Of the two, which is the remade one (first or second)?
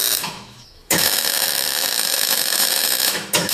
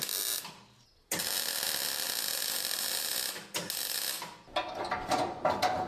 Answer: first